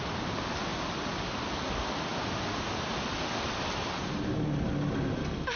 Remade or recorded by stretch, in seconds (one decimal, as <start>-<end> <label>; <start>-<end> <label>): 0.0-5.6 recorded